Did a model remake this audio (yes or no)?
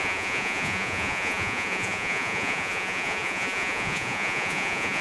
yes